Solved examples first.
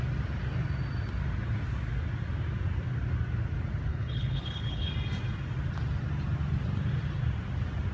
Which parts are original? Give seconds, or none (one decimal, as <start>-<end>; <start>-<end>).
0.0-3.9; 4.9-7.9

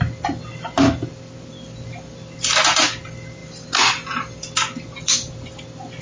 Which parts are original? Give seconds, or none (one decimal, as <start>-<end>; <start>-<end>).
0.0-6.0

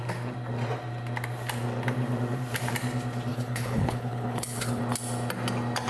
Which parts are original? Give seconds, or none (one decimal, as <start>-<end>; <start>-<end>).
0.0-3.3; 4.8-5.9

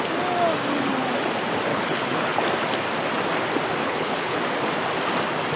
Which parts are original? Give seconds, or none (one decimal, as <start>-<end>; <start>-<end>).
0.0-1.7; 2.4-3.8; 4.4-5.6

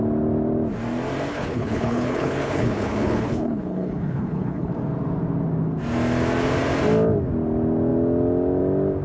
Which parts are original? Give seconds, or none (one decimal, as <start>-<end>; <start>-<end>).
0.0-1.3; 4.7-9.0

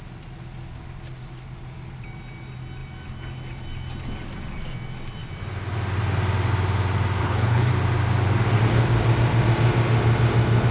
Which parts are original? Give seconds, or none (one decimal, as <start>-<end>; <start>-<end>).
0.0-7.2; 7.7-10.7

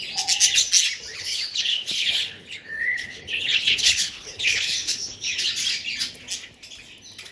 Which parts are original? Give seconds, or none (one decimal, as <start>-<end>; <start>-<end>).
0.0-1.1; 5.5-7.3